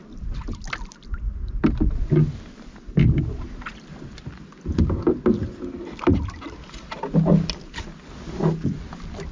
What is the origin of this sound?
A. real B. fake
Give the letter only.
A